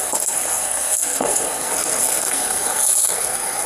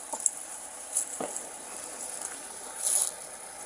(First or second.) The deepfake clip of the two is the first